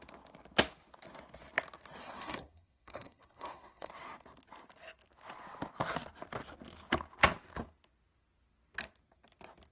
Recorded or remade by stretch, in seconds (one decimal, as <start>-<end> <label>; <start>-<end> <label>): 0.0-2.0 recorded; 2.0-3.9 remade; 3.9-9.7 recorded